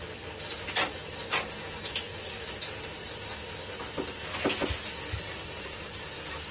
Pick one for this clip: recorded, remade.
recorded